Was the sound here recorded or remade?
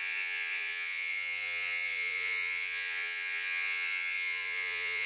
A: remade